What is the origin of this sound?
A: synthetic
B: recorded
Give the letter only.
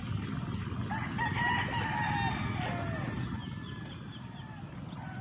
B